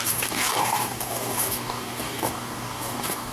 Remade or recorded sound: remade